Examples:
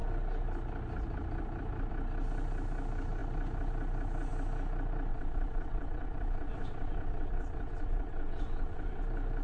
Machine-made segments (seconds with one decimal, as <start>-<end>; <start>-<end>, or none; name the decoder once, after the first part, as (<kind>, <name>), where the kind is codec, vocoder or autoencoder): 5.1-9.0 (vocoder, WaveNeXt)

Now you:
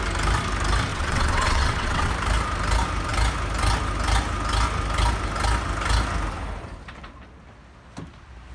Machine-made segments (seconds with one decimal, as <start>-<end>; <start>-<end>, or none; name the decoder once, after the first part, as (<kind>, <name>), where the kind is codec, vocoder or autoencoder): 0.9-2.1 (vocoder, WaveNeXt)

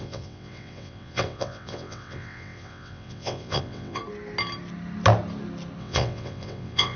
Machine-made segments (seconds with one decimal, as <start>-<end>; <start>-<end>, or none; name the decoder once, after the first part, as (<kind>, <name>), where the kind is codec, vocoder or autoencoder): 0.0-4.0 (vocoder, WaveNeXt); 5.8-7.0

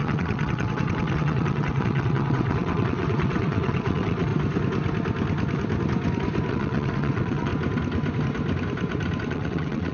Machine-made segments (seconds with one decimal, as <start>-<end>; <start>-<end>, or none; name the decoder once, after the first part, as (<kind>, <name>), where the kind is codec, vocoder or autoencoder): 0.0-4.3 (vocoder, WaveNeXt); 6.5-7.5; 9.3-9.9